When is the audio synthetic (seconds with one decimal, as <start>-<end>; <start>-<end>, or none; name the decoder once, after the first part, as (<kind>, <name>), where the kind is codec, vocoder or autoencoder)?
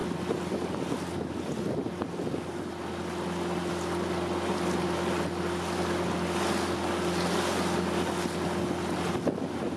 none